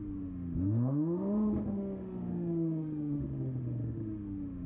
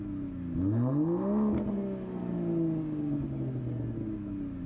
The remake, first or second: first